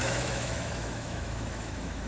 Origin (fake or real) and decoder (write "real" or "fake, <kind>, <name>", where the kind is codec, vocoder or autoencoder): fake, autoencoder, DAC-VAE